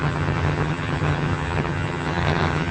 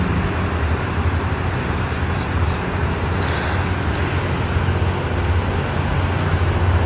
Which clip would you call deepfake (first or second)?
first